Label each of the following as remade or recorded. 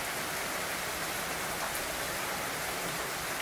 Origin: recorded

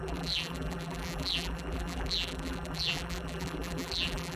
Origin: remade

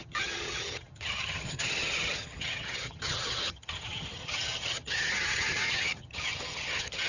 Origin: remade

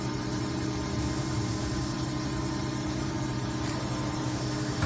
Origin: remade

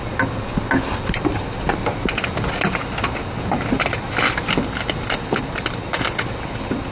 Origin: recorded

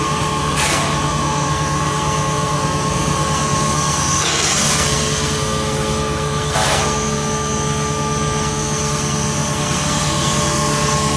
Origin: remade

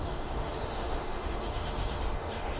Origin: remade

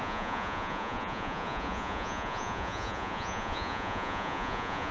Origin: remade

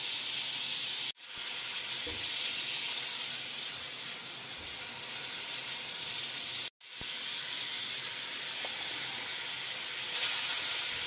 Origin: recorded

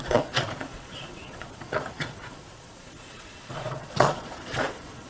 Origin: remade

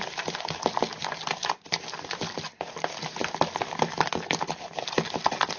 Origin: recorded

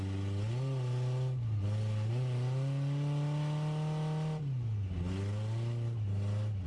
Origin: recorded